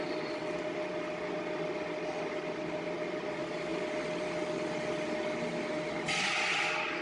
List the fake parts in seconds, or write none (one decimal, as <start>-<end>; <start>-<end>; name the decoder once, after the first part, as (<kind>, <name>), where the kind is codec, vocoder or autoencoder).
none